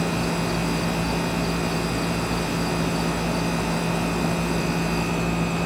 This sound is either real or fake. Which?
real